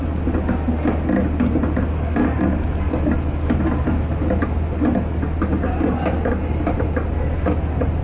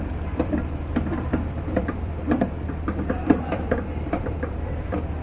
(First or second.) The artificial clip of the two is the second